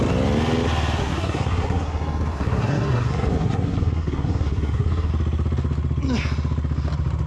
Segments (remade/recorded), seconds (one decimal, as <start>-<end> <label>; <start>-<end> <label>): 0.0-1.0 recorded; 1.0-5.1 remade; 5.1-7.3 recorded